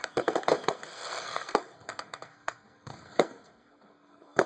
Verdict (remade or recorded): remade